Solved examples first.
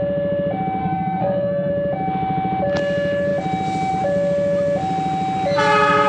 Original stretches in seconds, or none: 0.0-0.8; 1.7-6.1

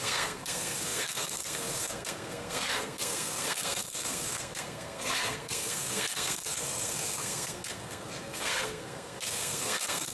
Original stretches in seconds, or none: none

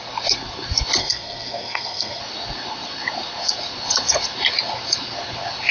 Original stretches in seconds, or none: 0.0-1.0; 2.2-5.7

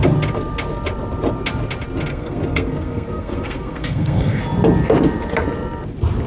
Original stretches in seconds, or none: 0.0-2.1; 4.4-6.3